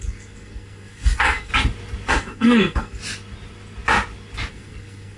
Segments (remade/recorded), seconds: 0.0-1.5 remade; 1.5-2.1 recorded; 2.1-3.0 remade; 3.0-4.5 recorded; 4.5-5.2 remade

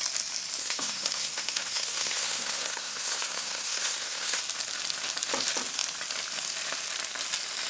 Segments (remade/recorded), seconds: 0.0-0.6 recorded; 0.6-4.4 remade; 4.4-7.7 recorded

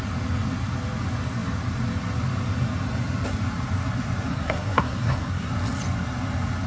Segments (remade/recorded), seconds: 0.0-4.3 recorded; 4.3-5.5 remade; 5.5-6.7 recorded

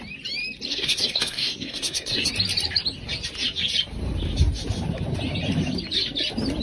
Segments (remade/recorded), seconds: 0.0-0.7 recorded; 0.7-2.3 remade; 2.3-6.6 recorded

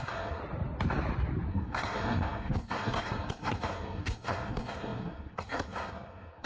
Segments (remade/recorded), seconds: 0.0-0.4 remade; 0.4-1.5 recorded; 1.5-6.5 remade

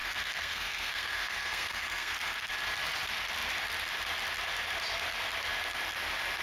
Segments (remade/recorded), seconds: 0.0-2.5 remade; 2.5-6.4 recorded

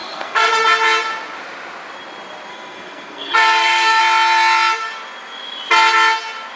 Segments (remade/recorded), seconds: 0.0-0.5 remade; 0.5-2.5 recorded; 2.5-4.0 remade; 4.0-6.6 recorded

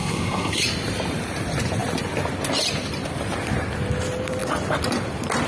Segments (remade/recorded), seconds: 0.0-0.6 remade; 0.6-5.5 recorded